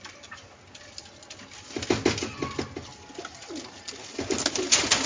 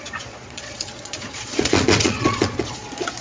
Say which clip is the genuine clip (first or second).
first